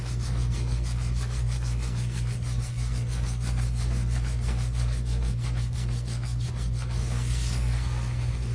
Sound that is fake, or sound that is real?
fake